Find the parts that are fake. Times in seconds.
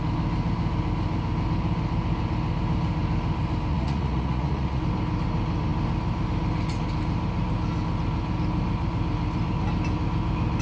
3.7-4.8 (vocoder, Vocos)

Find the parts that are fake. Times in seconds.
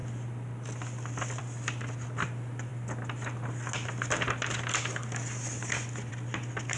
none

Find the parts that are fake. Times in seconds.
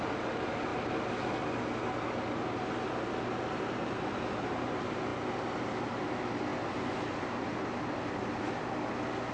none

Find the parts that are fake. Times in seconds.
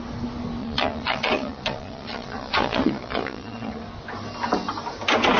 0.6-3.8 (vocoder, Vocos)